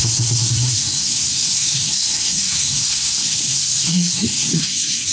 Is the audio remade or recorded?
remade